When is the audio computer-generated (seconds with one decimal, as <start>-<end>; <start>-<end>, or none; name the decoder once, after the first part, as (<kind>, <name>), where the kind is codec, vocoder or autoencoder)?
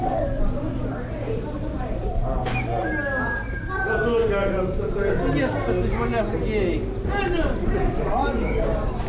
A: 0.0-2.2 (vocoder, BigVGAN v2); 3.5-4.0; 7.2-9.1